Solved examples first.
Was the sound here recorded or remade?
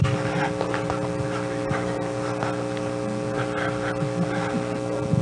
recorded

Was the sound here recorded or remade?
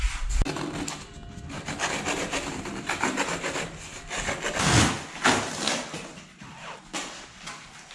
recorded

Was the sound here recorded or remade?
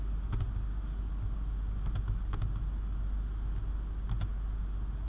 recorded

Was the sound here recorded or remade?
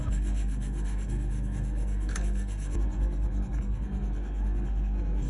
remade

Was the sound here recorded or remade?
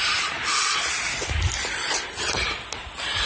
recorded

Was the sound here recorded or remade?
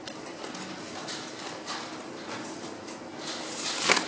recorded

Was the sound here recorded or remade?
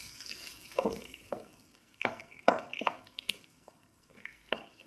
remade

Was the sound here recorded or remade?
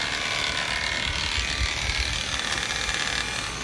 recorded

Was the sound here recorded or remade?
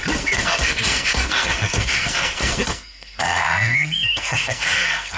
remade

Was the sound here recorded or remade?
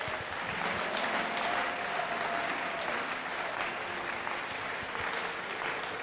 recorded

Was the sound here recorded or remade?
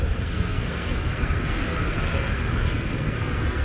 remade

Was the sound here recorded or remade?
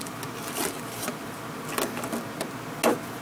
recorded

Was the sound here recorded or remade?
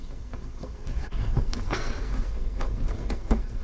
remade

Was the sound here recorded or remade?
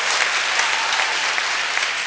recorded